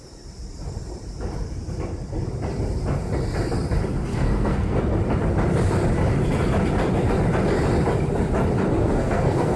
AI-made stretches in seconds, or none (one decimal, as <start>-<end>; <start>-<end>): 4.1-4.8; 8.8-9.6